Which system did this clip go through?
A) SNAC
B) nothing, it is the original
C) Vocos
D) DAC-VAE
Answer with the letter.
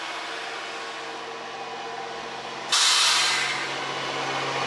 B